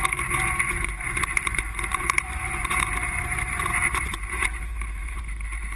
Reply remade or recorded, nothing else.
remade